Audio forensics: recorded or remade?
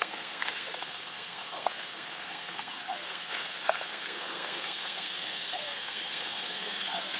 remade